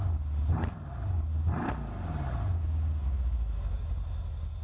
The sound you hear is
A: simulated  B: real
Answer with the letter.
B